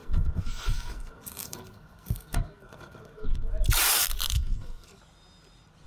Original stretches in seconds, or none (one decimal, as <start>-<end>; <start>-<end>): 3.5-4.3; 5.0-5.9